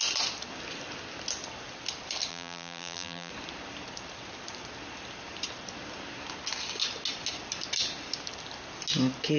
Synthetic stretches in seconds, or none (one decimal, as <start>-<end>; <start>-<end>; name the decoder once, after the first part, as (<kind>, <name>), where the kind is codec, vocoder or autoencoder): 2.3-3.3 (vocoder, BigVGAN v2)